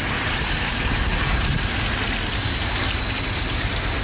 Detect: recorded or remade recorded